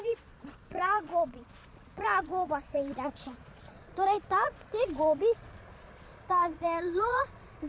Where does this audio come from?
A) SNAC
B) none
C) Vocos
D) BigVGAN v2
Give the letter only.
C